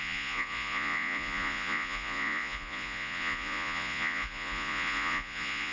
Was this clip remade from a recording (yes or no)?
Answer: yes